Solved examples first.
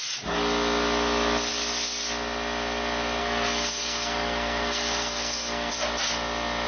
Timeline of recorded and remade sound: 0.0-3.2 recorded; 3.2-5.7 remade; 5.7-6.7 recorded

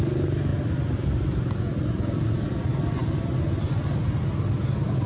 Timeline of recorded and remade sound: 0.0-5.1 recorded

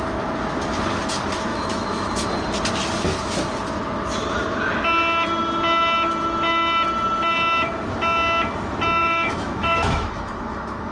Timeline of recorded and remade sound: 0.0-1.5 recorded; 1.5-2.3 remade; 2.3-9.0 recorded; 9.0-10.9 remade